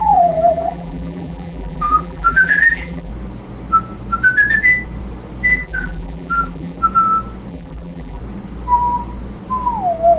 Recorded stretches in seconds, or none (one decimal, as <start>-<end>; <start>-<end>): 3.1-5.5; 6.8-7.5; 8.2-10.2